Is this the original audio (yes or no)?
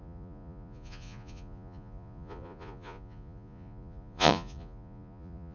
no